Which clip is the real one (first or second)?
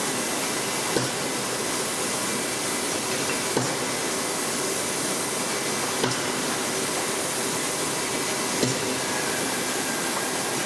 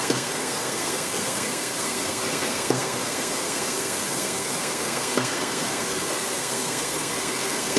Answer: first